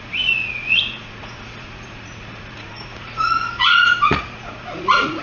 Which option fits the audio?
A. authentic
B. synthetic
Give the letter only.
B